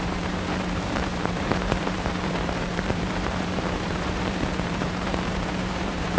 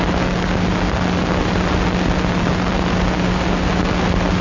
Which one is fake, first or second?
first